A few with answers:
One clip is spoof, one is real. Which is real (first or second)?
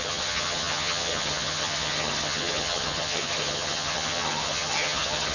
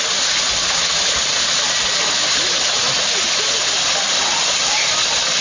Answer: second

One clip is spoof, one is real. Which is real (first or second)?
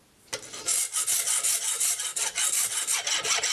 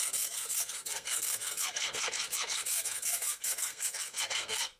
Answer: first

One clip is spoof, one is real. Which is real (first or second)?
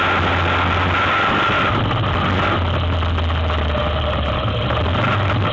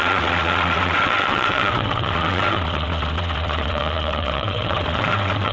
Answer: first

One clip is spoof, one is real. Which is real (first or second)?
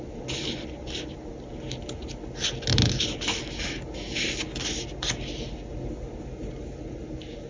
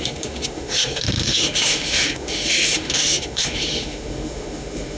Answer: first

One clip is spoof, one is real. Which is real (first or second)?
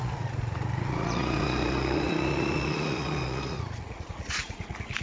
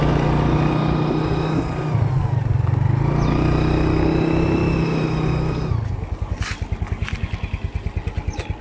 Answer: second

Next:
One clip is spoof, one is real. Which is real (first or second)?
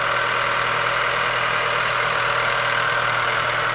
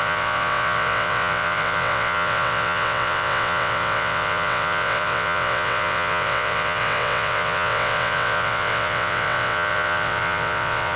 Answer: first